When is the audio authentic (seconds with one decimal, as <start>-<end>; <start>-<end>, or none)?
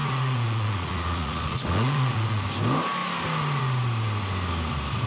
2.4-5.1